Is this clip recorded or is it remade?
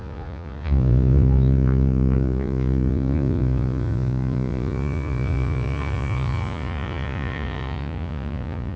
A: remade